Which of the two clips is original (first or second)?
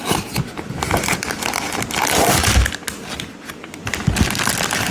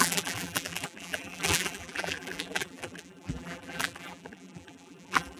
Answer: first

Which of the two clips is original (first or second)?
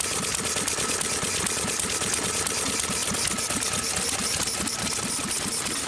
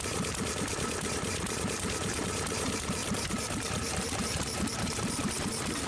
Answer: first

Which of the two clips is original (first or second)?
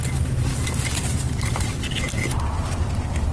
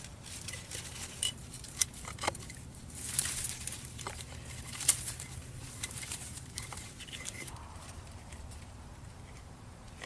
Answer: first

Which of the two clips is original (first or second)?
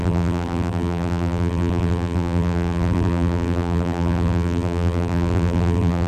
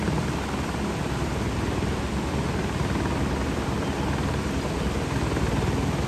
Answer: second